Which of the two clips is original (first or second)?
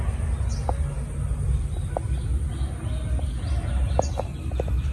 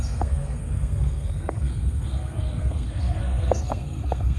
first